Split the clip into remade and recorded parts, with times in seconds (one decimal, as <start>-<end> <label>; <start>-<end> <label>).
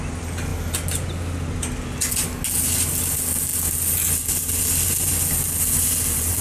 0.0-6.4 recorded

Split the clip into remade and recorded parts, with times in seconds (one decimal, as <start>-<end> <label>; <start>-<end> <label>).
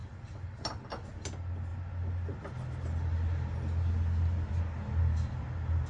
0.0-5.9 recorded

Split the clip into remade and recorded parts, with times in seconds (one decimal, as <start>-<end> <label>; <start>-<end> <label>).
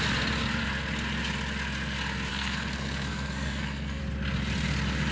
0.0-2.3 recorded; 2.3-4.0 remade; 4.0-5.1 recorded